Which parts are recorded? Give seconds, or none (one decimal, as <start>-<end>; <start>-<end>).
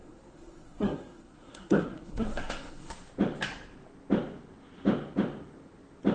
2.9-6.1